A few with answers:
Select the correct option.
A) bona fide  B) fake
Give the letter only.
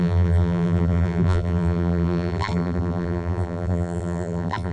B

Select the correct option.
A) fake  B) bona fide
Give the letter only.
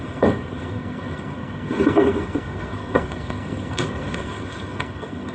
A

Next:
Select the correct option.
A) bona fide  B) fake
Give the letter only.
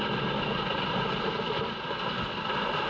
A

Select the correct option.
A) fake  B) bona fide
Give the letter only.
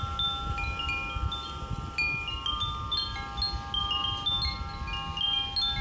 B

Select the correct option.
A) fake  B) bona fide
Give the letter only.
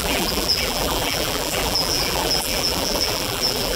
A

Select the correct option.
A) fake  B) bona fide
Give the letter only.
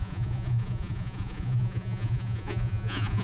A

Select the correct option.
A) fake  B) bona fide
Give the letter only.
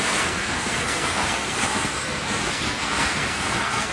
A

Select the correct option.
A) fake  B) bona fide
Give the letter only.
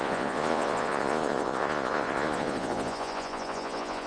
A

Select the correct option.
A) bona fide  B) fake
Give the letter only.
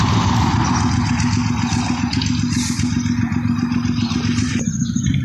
A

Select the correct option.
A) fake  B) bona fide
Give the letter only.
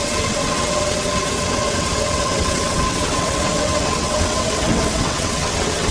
A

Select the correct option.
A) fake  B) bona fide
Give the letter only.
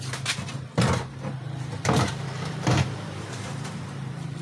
A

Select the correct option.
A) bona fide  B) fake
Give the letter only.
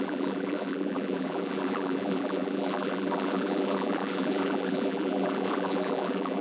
B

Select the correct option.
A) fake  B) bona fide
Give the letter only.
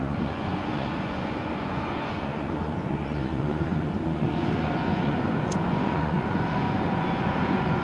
A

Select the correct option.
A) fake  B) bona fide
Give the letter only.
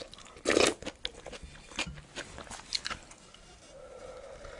B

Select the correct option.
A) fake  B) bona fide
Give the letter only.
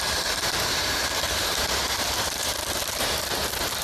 A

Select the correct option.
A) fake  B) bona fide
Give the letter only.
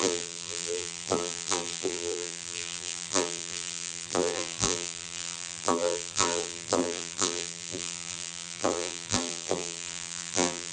A